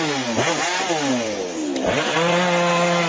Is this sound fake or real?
real